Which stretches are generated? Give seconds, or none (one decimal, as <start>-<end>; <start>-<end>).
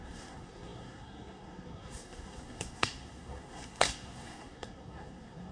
0.0-5.5